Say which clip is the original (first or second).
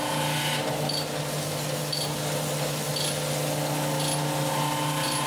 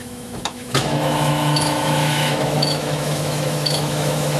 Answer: first